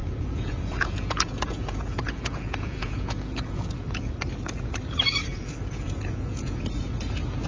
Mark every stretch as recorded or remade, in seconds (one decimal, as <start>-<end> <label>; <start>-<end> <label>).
0.0-4.1 remade; 4.1-5.3 recorded; 5.3-6.6 remade; 6.6-7.5 recorded